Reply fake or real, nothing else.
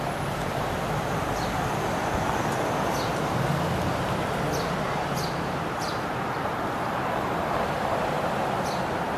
fake